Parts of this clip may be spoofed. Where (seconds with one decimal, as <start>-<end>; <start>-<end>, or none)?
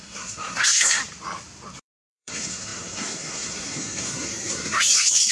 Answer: 0.0-1.0; 1.8-5.3